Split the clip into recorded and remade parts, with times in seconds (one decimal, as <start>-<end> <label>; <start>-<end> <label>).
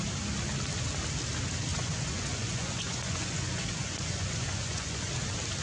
0.0-1.7 recorded; 1.7-5.1 remade; 5.1-5.6 recorded